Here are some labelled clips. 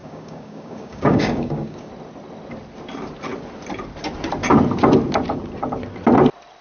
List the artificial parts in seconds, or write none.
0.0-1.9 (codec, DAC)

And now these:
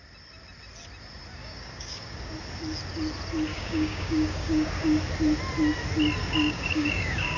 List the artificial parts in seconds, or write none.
1.4-2.3 (codec, DAC); 3.5-4.7; 6.2-7.4

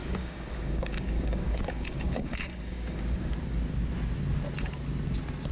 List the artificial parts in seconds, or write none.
0.0-3.3 (codec, DAC)

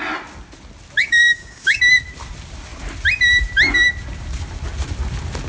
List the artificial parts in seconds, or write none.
1.0-1.8 (codec, DAC)

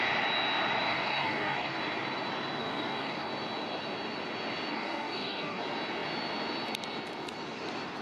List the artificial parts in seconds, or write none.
0.9-1.8 (codec, DAC); 2.6-3.3; 4.7-5.6

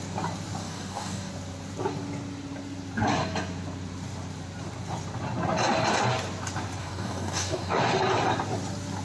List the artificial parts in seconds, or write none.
0.6-1.3 (codec, DAC); 6.8-7.8